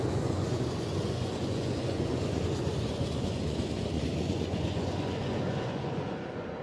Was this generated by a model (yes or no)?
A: yes